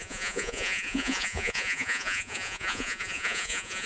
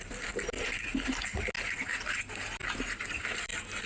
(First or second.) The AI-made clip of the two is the first